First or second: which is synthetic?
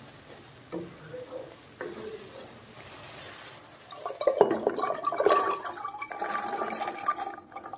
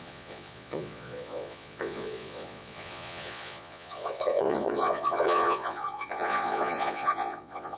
second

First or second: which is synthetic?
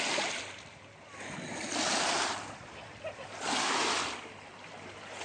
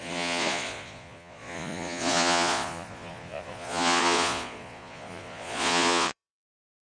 second